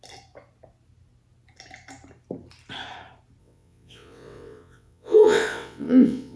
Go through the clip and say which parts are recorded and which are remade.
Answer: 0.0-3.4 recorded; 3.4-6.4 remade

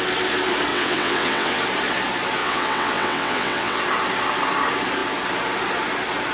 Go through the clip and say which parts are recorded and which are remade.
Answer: 0.0-0.7 recorded; 0.7-1.6 remade; 1.6-2.4 recorded; 2.4-3.8 remade; 3.8-6.3 recorded

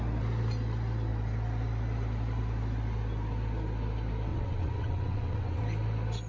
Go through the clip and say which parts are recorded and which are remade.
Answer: 0.0-4.3 recorded; 4.3-5.6 remade; 5.6-6.3 recorded

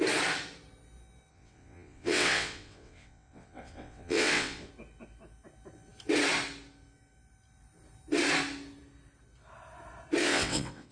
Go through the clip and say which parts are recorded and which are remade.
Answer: 0.0-1.3 recorded; 1.3-4.7 remade; 4.7-10.2 recorded; 10.2-10.9 remade